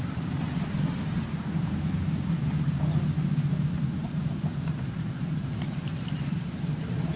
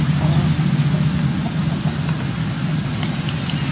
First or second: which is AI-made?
first